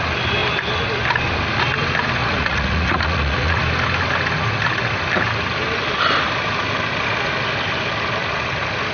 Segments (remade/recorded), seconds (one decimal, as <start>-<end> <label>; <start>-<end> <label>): 0.0-2.2 recorded; 2.2-3.6 remade; 3.6-8.9 recorded